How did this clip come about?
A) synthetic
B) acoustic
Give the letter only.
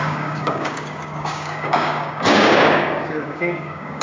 A